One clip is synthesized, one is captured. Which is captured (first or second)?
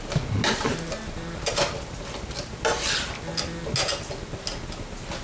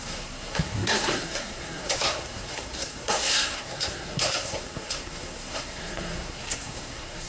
first